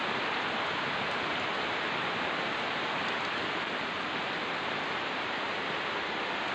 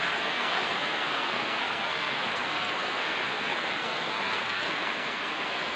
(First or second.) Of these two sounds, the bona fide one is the first